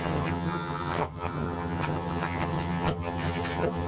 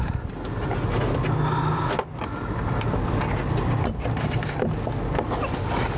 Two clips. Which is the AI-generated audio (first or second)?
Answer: first